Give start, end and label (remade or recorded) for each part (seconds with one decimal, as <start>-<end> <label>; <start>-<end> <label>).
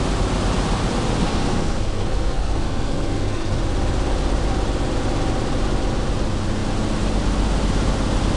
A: 0.0-1.2 recorded; 1.2-3.6 remade; 3.6-8.4 recorded